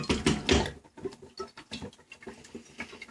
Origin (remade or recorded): recorded